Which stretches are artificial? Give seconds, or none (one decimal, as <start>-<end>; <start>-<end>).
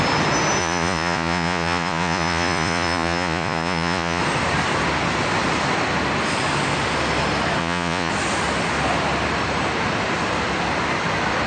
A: 0.6-4.2; 7.6-8.1